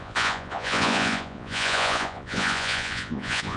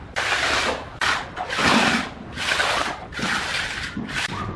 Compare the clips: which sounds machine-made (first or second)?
first